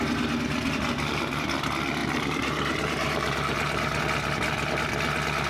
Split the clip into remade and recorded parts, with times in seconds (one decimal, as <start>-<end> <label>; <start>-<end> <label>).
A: 0.0-2.0 recorded; 2.0-4.0 remade; 4.0-5.5 recorded